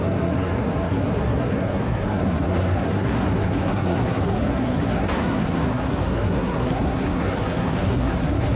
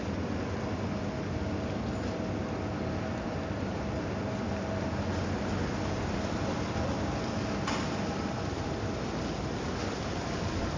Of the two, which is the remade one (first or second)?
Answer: first